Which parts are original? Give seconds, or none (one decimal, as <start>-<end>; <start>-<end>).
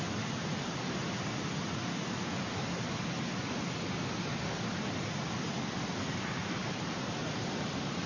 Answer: 0.0-7.2